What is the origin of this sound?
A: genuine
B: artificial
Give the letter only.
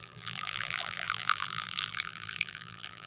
B